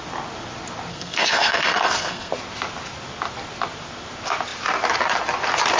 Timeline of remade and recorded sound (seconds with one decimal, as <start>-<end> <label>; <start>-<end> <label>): 0.0-0.9 recorded; 0.9-2.3 remade; 2.3-5.8 recorded